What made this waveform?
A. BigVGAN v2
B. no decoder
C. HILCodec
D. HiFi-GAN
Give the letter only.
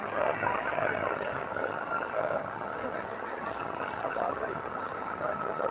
D